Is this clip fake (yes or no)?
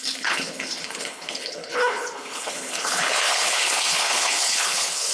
yes